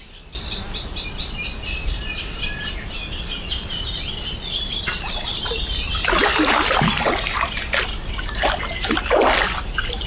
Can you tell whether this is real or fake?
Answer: fake